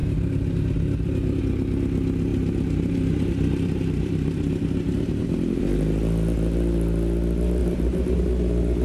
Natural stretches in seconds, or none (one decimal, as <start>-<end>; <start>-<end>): 1.4-2.3; 5.6-7.6; 8.2-8.8

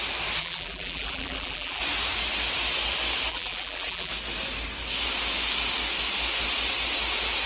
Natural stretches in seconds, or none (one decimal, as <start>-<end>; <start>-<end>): 0.0-0.4; 1.8-3.3; 4.1-7.5

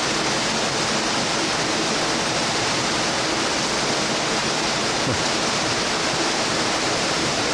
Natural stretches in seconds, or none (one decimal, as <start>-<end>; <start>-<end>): 0.0-4.4

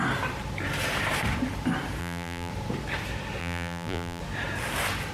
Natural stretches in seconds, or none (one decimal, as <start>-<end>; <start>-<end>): 0.0-2.0; 2.5-3.4; 4.2-5.1

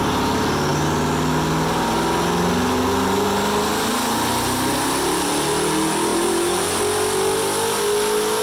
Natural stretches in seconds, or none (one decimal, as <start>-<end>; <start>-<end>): 0.0-6.1; 6.8-8.4

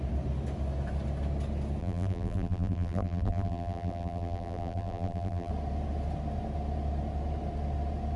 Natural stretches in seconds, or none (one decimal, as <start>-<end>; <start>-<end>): 0.0-1.8; 5.5-8.2

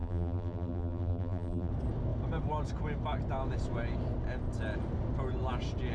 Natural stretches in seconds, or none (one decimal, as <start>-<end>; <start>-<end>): 1.7-5.9

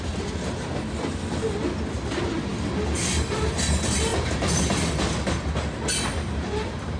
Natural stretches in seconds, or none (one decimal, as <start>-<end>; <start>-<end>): 0.0-7.0